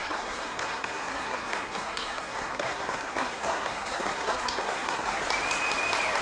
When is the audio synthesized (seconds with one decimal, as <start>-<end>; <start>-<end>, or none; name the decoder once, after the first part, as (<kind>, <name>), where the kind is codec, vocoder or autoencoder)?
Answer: 0.0-5.2 (codec, SNAC)

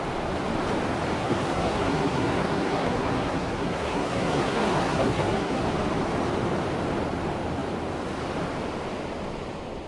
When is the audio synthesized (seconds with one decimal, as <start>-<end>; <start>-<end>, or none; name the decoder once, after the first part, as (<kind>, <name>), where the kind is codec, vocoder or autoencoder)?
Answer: 1.2-5.6 (codec, SNAC)

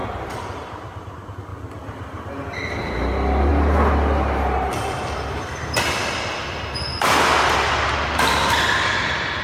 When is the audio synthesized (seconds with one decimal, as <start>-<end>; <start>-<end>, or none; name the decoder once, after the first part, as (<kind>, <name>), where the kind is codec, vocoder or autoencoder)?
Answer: none

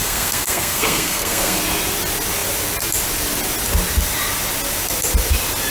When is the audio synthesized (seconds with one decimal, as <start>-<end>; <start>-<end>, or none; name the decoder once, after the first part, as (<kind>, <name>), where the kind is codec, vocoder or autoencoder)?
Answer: 0.0-1.6 (codec, SNAC)

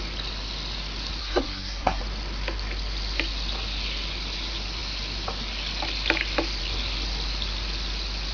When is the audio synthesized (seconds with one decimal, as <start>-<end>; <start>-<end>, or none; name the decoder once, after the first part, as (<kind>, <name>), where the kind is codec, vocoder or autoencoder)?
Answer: 1.2-2.0 (codec, SNAC)